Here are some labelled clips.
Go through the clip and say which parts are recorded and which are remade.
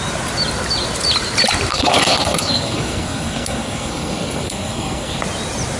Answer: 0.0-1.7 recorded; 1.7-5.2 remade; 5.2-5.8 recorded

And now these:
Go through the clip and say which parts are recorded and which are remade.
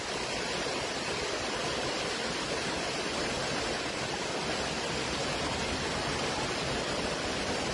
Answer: 0.0-7.7 recorded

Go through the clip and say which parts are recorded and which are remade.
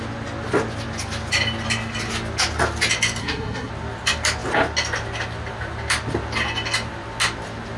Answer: 0.0-3.2 recorded; 3.2-3.7 remade; 3.7-7.8 recorded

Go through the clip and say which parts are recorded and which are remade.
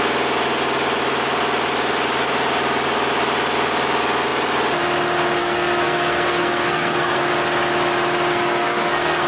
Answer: 0.0-5.4 recorded; 5.4-7.3 remade; 7.3-8.3 recorded; 8.3-9.3 remade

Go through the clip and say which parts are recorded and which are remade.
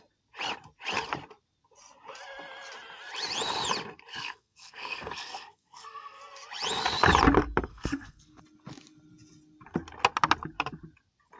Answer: 0.0-4.1 recorded; 4.1-6.2 remade; 6.2-7.7 recorded; 7.7-8.4 remade; 8.4-11.4 recorded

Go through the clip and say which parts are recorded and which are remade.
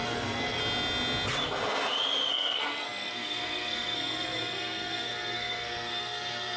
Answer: 0.0-0.6 remade; 0.6-2.3 recorded; 2.3-6.6 remade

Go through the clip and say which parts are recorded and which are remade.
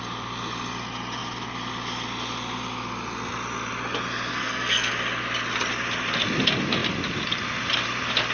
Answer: 0.0-4.3 recorded; 4.3-4.9 remade; 4.9-8.3 recorded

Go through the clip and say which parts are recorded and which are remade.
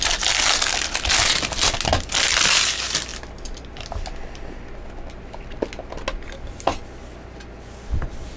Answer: 0.0-8.4 recorded